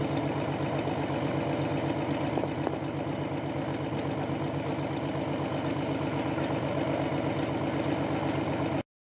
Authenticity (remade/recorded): recorded